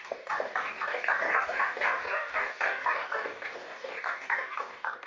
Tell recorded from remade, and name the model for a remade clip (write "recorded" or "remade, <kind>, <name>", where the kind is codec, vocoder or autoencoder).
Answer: remade, codec, DAC